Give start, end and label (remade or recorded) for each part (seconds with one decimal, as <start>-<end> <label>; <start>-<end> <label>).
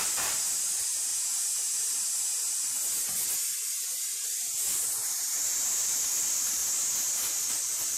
0.0-1.1 remade; 1.1-4.2 recorded; 4.2-6.6 remade; 6.6-7.5 recorded; 7.5-8.0 remade